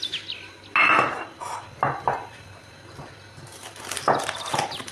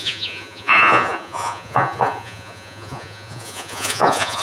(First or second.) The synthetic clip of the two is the second